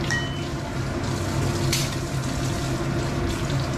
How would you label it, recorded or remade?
recorded